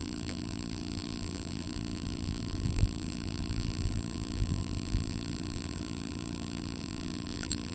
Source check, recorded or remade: remade